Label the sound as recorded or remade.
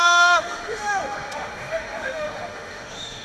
remade